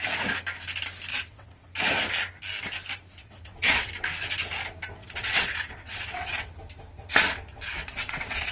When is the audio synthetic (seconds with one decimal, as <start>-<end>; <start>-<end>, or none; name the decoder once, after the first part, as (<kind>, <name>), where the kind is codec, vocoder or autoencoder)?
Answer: 1.1-1.7 (vocoder, WaveNeXt); 3.2-3.9; 5.0-6.5; 7.7-8.5